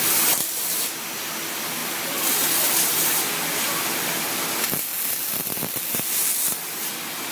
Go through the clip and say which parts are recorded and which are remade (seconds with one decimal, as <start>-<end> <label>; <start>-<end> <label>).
0.0-7.3 recorded